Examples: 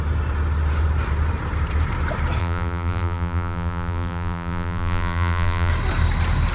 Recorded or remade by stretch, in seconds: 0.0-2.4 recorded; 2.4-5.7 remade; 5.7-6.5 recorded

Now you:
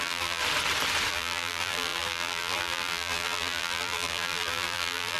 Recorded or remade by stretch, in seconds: 0.0-0.4 remade; 0.4-1.1 recorded; 1.1-5.2 remade

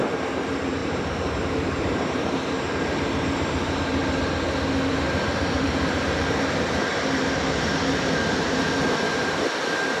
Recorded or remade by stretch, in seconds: 0.0-4.0 remade; 4.0-4.9 recorded; 4.9-10.0 remade

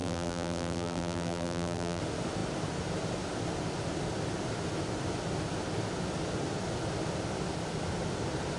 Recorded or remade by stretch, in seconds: 0.0-2.0 remade; 2.0-8.6 recorded